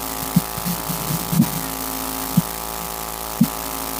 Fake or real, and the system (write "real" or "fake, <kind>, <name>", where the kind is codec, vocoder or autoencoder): real